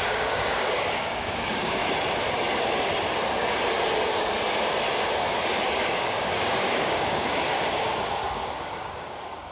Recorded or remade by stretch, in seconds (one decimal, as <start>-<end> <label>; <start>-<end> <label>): 0.0-1.8 remade; 1.8-5.7 recorded; 5.7-9.5 remade